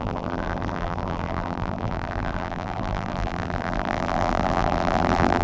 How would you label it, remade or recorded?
remade